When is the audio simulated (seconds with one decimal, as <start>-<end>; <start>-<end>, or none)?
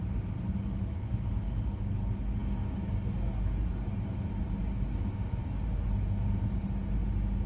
none